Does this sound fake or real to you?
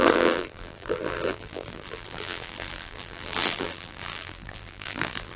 fake